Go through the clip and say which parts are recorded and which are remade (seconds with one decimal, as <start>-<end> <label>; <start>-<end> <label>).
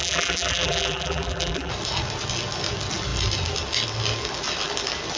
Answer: 0.0-1.7 remade; 1.7-5.2 recorded